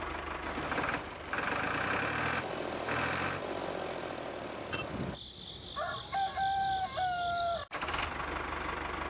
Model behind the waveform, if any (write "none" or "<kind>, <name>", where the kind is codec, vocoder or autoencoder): none